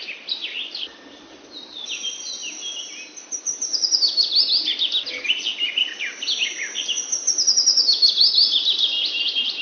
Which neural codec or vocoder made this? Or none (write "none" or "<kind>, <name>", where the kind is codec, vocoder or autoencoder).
none